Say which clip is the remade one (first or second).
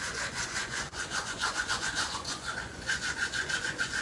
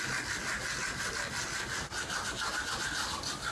first